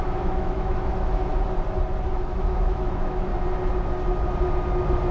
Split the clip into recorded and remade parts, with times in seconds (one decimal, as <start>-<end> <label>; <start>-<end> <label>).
0.0-1.3 remade; 1.3-2.1 recorded; 2.1-3.3 remade; 3.3-5.1 recorded